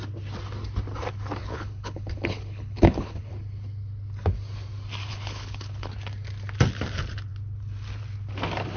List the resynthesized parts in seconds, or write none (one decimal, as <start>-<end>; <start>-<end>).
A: 1.4-3.3; 5.1-5.9